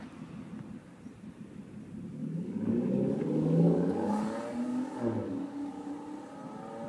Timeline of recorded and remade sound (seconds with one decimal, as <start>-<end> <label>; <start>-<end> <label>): 0.0-2.2 recorded; 2.2-4.1 remade; 4.1-4.7 recorded; 4.7-5.9 remade; 5.9-6.9 recorded